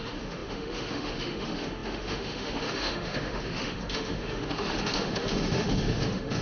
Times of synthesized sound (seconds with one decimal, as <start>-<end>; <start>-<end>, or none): 0.0-6.4